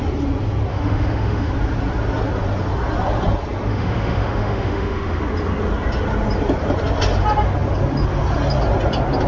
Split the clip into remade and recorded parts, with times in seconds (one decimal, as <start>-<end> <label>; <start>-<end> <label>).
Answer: 0.0-0.7 recorded; 0.7-1.5 remade; 1.5-3.7 recorded; 3.7-5.2 remade; 5.2-9.3 recorded